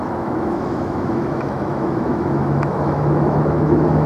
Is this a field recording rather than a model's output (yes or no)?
no